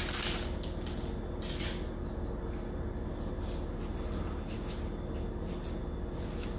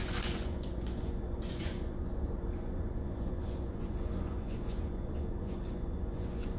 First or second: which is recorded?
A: first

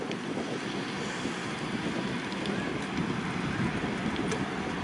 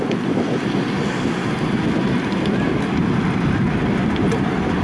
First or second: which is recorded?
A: second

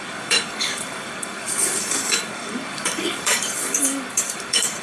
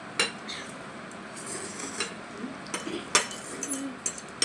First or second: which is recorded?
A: second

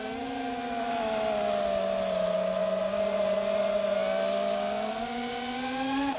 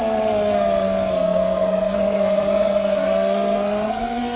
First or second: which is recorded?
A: first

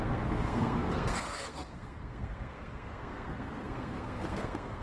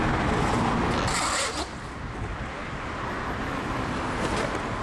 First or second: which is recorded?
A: second